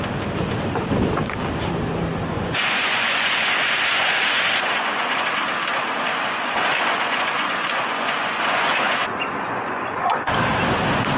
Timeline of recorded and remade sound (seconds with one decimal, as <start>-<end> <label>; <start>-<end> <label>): 0.0-2.3 recorded; 2.3-5.3 remade; 5.3-6.1 recorded; 6.1-10.3 remade; 10.3-11.2 recorded

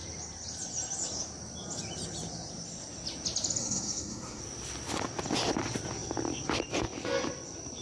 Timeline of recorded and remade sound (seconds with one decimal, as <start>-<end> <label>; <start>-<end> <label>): 0.0-3.6 recorded; 3.6-4.4 remade; 4.4-7.8 recorded

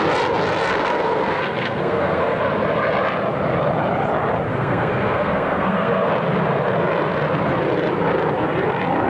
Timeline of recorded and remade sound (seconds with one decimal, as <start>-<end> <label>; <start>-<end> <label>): 0.0-0.7 recorded; 0.7-2.4 remade; 2.4-4.5 recorded; 4.5-6.1 remade; 6.1-9.1 recorded

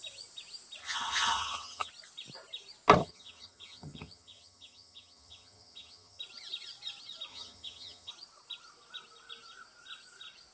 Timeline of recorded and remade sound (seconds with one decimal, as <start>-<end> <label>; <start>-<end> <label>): 0.0-0.8 recorded; 0.8-1.9 remade; 1.9-3.0 recorded; 3.0-6.2 remade; 6.2-7.3 recorded; 7.3-8.1 remade; 8.1-10.5 recorded

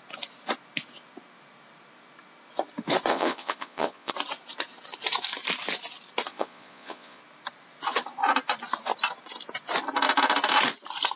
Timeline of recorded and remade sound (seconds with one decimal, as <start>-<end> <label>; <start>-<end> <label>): 0.0-3.1 recorded; 3.1-4.1 remade; 4.1-6.3 recorded; 6.3-7.2 remade; 7.2-11.2 recorded

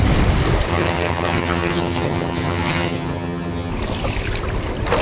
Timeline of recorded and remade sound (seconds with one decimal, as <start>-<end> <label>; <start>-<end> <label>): 0.0-0.7 recorded; 0.7-3.7 remade; 3.7-5.0 recorded

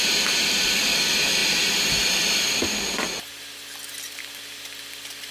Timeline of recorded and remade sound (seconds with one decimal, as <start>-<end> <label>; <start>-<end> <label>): 0.0-5.3 recorded

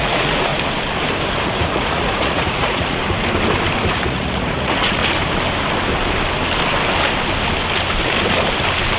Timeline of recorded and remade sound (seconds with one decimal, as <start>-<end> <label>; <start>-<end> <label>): 0.0-0.5 remade; 0.5-1.4 recorded; 1.4-3.0 remade; 3.0-3.9 recorded; 3.9-5.0 remade; 5.0-9.0 recorded